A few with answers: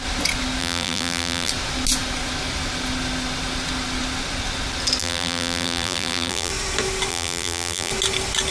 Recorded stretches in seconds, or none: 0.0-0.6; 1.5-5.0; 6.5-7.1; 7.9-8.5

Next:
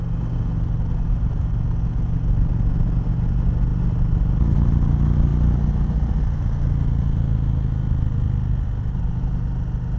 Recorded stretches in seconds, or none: 0.0-10.0